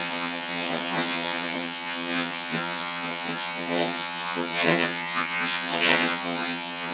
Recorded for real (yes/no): no